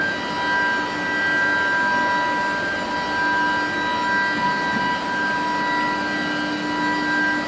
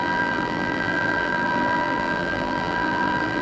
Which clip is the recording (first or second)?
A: first